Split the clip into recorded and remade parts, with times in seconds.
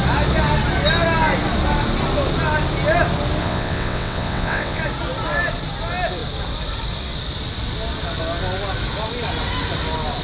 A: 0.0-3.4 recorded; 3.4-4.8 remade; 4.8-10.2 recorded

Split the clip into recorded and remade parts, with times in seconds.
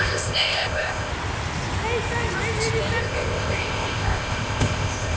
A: 0.0-1.1 remade; 1.1-3.0 recorded; 3.0-5.2 remade